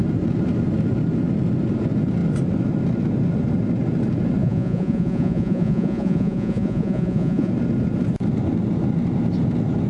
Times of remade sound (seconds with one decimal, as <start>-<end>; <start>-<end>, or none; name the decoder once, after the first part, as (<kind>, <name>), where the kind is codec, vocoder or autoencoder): 4.4-7.5 (vocoder, Vocos)